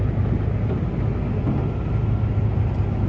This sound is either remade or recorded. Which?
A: recorded